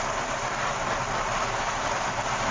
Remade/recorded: recorded